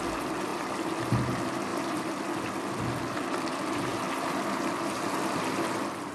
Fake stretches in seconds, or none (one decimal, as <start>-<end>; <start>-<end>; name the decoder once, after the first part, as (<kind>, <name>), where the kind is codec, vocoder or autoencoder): 1.7-2.2 (vocoder, BigVGAN v2)